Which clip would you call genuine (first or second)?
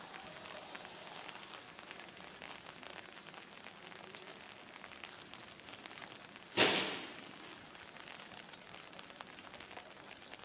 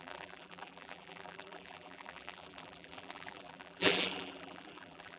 first